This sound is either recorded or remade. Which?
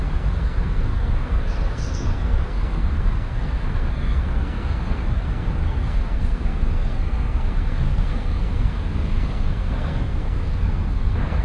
remade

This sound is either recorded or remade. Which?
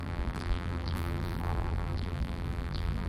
remade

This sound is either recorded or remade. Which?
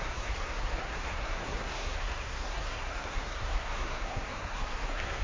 remade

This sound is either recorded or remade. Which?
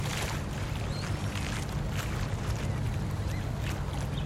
recorded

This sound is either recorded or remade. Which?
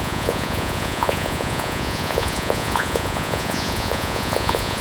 remade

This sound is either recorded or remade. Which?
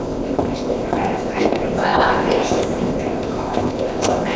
remade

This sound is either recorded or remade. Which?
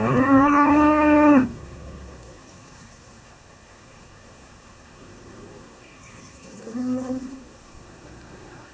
remade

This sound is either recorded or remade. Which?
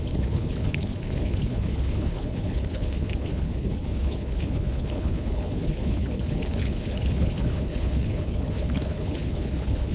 remade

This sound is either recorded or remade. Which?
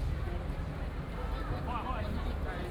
recorded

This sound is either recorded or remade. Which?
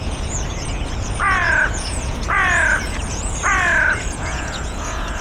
remade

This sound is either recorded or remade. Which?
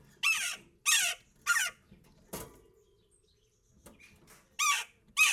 recorded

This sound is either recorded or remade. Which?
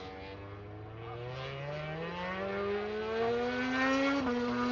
recorded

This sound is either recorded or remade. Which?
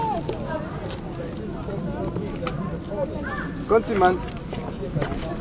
recorded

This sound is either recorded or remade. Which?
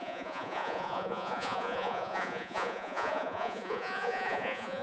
remade